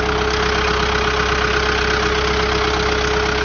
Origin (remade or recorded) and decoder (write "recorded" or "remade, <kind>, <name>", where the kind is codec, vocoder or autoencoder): recorded